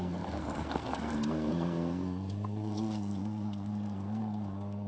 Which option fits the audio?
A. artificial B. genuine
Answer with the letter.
A